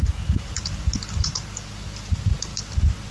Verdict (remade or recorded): recorded